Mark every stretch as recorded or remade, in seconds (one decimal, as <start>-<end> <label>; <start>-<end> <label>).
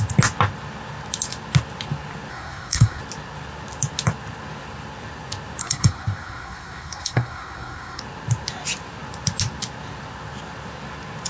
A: 0.0-2.3 recorded; 2.3-3.0 remade; 3.0-5.6 recorded; 5.6-8.0 remade; 8.0-11.3 recorded